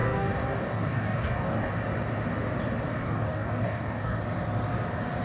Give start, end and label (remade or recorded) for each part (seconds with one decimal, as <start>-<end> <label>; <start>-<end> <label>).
0.0-1.7 remade; 1.7-2.9 recorded; 2.9-4.2 remade; 4.2-5.2 recorded